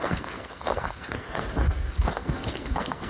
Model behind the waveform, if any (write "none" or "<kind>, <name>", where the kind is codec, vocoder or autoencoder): codec, SNAC